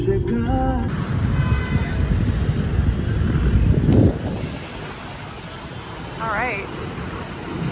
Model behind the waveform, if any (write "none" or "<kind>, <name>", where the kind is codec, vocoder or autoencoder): none